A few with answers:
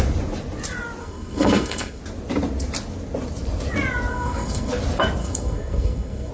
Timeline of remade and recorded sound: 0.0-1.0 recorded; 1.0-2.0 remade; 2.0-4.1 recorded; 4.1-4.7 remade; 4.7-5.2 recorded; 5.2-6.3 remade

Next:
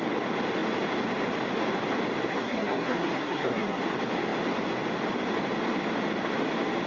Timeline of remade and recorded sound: 0.0-2.3 recorded; 2.3-3.8 remade; 3.8-6.9 recorded

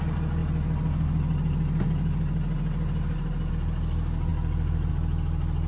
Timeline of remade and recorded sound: 0.0-5.7 recorded